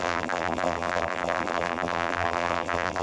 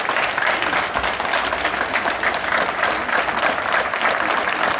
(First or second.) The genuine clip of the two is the second